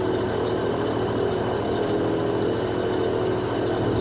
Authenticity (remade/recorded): recorded